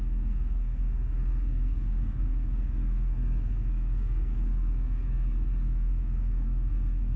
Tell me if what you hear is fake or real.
fake